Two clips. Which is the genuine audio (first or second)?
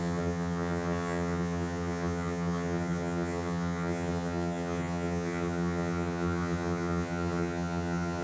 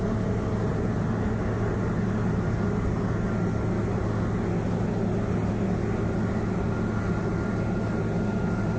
second